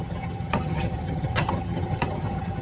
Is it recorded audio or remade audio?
remade